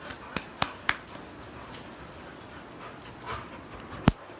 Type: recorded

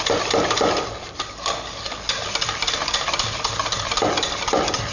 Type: recorded